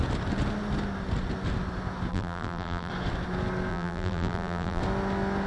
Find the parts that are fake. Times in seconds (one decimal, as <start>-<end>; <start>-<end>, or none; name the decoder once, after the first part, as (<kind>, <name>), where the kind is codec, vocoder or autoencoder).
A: 2.1-2.9 (vocoder, BigVGAN v2); 3.7-4.8